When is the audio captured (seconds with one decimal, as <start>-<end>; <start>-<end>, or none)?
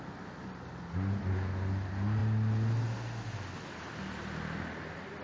0.0-5.2